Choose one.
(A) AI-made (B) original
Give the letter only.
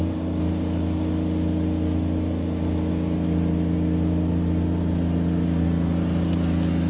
B